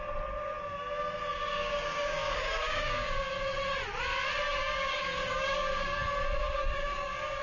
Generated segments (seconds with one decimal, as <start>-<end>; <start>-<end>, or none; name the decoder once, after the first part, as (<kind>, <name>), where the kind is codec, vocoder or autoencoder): 1.3-3.1 (codec, DAC); 4.6-6.0; 6.4-7.4